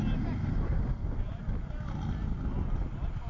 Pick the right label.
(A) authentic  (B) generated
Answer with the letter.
A